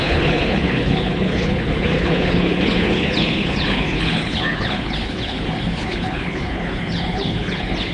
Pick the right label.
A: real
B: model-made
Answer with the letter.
B